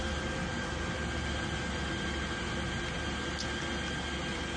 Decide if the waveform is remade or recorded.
recorded